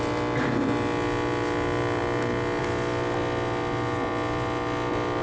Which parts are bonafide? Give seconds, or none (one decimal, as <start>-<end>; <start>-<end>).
0.0-5.2